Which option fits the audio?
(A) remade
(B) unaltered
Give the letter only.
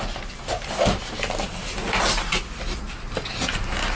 B